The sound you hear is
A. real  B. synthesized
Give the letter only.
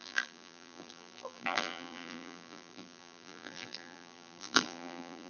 B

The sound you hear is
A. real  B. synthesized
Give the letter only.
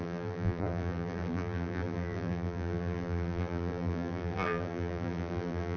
B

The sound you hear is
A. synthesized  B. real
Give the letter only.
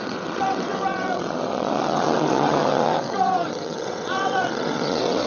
A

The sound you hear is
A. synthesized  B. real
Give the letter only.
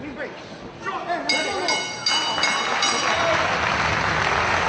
B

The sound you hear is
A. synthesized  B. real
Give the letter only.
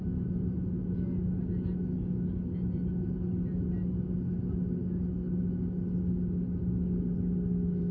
B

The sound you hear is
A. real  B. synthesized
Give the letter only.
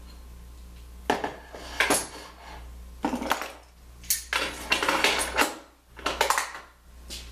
A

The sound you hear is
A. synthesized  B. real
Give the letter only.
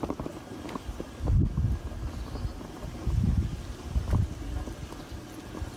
B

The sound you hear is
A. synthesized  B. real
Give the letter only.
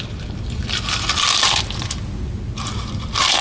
B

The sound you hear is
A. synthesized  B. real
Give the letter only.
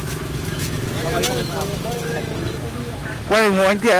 A